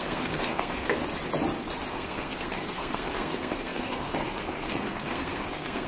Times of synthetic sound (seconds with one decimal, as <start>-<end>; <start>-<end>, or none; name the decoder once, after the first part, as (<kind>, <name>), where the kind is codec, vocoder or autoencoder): 0.0-1.0 (codec, SNAC); 1.9-5.9